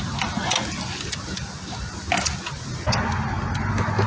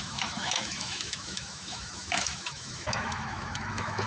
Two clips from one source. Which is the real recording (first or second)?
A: first